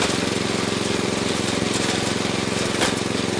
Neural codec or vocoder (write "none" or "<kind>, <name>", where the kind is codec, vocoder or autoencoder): none